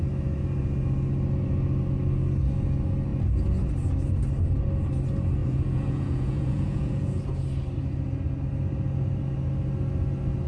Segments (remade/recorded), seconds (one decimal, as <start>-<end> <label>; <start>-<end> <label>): 0.0-5.4 recorded; 5.4-7.2 remade; 7.2-10.5 recorded